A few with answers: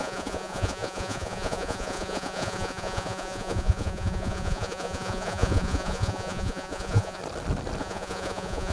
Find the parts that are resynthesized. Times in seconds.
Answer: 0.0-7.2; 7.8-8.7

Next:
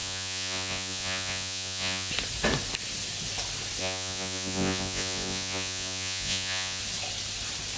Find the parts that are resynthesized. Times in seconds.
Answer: 0.0-2.1; 3.8-6.8

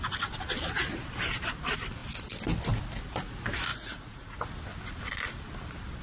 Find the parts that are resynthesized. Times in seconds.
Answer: 3.7-4.4

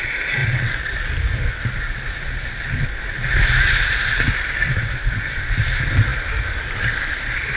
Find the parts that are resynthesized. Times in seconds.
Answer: none